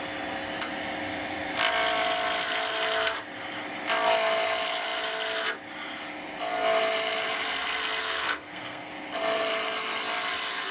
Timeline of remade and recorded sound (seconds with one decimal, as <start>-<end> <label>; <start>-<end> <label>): 0.0-8.0 recorded; 8.0-8.9 remade; 8.9-10.7 recorded

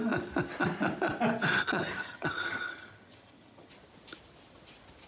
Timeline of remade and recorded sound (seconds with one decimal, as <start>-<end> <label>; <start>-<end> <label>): 0.0-1.6 recorded; 1.6-3.7 remade; 3.7-5.1 recorded

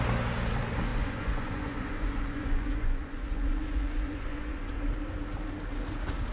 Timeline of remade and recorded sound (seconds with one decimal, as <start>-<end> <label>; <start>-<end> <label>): 0.0-0.9 recorded; 0.9-4.7 remade; 4.7-6.3 recorded

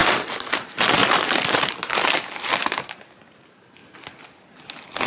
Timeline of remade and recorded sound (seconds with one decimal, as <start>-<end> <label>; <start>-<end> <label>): 0.0-0.5 recorded; 0.5-3.8 remade; 3.8-5.1 recorded